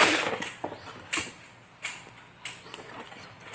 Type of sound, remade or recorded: recorded